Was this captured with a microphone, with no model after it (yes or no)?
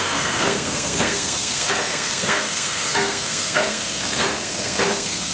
no